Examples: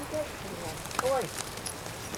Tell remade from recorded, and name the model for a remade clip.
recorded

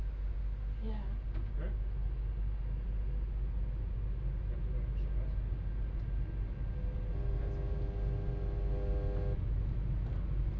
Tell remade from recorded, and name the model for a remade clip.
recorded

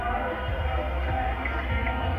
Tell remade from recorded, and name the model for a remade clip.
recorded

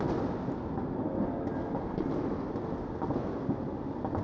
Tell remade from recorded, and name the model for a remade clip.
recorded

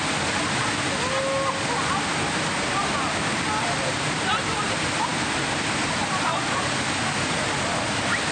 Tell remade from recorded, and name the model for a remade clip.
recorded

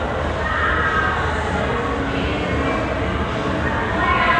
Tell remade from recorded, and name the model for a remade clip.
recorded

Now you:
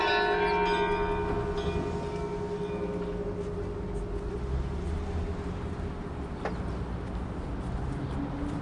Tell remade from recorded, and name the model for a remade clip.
recorded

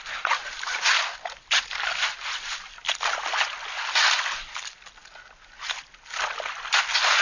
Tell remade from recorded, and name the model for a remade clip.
recorded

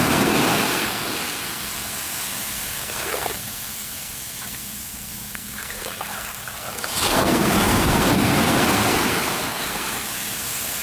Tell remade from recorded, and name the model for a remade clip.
remade, codec, SNAC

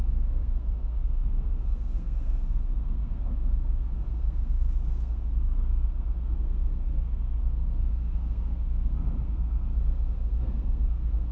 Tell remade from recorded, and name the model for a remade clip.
remade, codec, SNAC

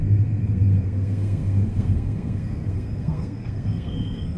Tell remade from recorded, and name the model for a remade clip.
remade, codec, SNAC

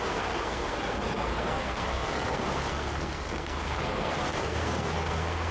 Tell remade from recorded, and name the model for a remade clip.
remade, codec, SNAC